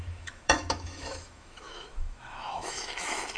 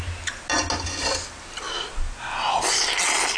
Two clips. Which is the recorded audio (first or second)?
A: second